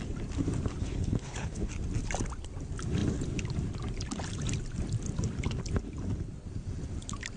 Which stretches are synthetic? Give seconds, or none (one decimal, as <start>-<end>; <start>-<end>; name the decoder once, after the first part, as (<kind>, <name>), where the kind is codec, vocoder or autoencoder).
0.8-1.7 (codec, HILCodec)